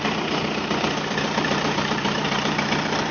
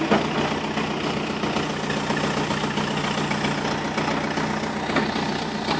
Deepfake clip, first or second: first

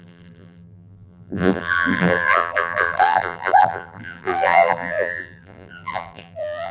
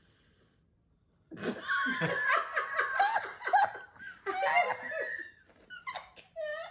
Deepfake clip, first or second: first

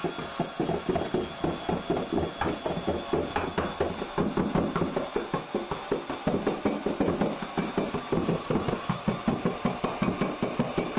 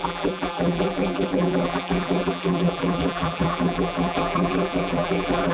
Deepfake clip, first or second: second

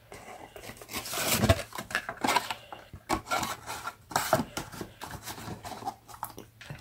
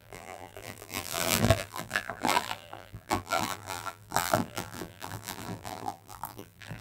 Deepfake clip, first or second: second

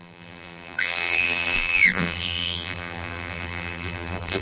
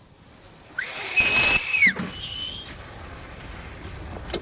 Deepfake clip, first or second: first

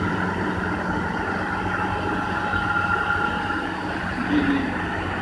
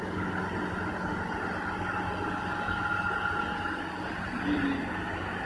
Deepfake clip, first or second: first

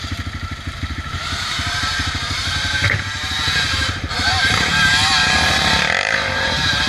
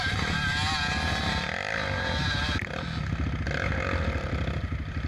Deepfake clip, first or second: first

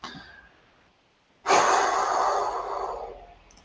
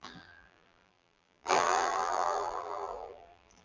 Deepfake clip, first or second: second